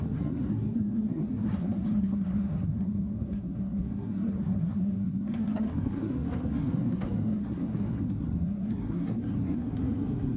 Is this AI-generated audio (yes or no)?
yes